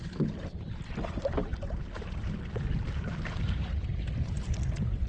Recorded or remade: recorded